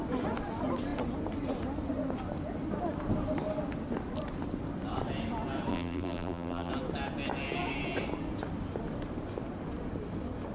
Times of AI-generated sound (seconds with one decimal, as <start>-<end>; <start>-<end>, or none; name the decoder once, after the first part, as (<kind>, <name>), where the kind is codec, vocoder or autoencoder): 5.7-6.7 (vocoder, BigVGAN v2)